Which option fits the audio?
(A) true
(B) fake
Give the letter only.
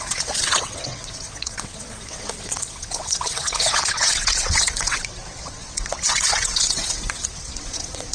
B